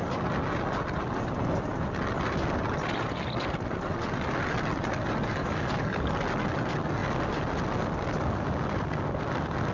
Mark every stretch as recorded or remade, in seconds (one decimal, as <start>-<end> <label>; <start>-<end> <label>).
0.0-5.4 recorded; 5.4-6.1 remade; 6.1-9.7 recorded